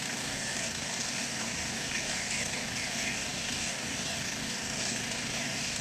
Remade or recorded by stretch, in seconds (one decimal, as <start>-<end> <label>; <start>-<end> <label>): 0.0-5.8 remade